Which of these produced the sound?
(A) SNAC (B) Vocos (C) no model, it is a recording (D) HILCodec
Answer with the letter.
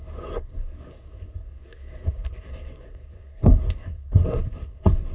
A